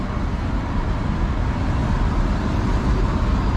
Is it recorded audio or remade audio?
recorded